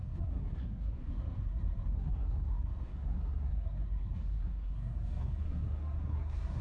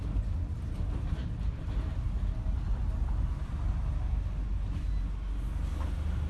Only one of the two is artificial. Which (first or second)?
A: first